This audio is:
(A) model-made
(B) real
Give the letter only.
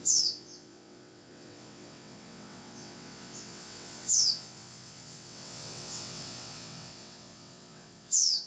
A